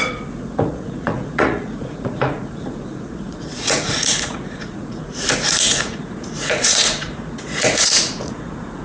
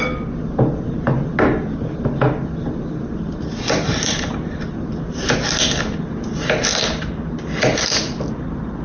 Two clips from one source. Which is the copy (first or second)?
first